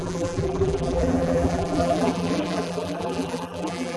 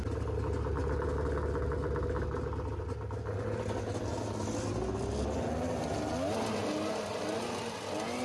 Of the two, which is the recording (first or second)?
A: second